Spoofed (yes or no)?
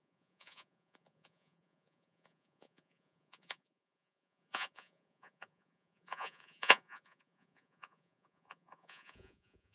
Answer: yes